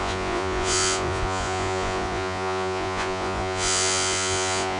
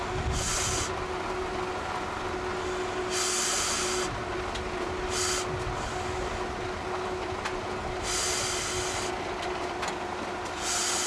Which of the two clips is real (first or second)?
second